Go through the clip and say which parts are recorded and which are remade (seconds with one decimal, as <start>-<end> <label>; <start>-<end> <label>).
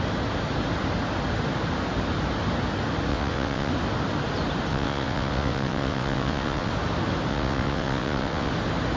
0.0-3.1 recorded; 3.1-3.7 remade; 3.7-4.7 recorded; 4.7-6.7 remade; 6.7-7.3 recorded; 7.3-8.5 remade; 8.5-9.0 recorded